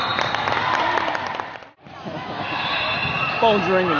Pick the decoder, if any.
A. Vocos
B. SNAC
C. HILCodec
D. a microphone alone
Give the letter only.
D